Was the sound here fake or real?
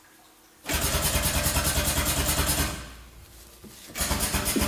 real